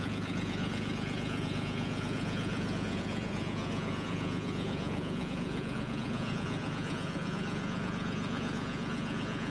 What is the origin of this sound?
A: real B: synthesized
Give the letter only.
B